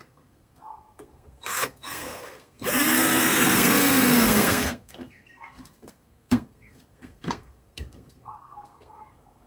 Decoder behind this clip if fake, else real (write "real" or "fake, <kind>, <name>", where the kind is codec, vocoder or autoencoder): fake, codec, SNAC